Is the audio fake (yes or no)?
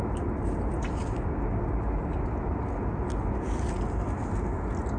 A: no